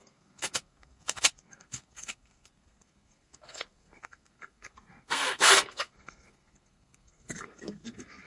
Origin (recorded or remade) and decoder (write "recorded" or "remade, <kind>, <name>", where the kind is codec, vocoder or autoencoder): remade, codec, SNAC